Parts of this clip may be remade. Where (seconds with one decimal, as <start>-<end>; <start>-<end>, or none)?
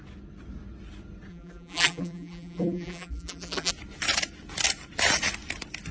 1.3-3.7